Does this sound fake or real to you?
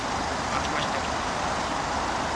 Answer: real